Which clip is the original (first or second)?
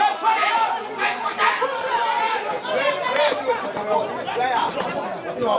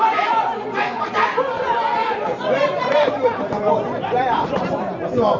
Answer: first